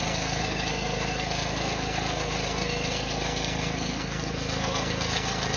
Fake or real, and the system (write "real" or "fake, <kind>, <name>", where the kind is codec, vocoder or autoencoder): fake, codec, SNAC